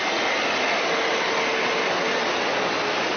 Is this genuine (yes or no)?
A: yes